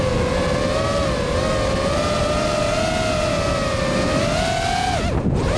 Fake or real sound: real